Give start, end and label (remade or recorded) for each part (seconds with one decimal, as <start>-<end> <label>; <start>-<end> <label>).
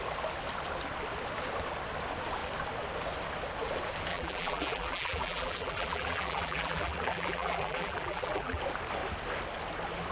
0.0-4.1 recorded; 4.1-8.6 remade; 8.6-10.1 recorded